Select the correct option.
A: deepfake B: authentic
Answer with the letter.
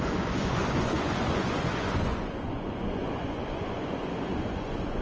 A